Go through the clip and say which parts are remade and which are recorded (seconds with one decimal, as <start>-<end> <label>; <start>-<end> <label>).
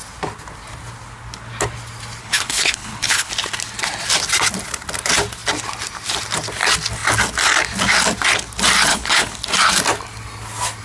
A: 0.0-2.2 recorded; 2.2-3.3 remade; 3.3-8.9 recorded; 8.9-9.4 remade; 9.4-10.8 recorded